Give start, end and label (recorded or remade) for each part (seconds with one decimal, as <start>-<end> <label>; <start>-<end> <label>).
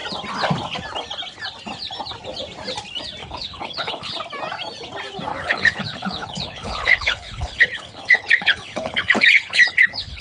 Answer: 0.0-3.2 recorded; 3.2-4.1 remade; 4.1-5.3 recorded; 5.3-10.2 remade